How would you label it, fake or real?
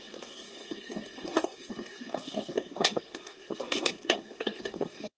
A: fake